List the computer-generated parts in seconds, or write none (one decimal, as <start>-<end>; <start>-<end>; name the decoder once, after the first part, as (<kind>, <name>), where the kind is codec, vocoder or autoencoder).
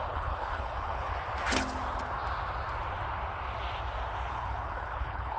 0.0-1.1 (codec, HILCodec); 4.3-5.4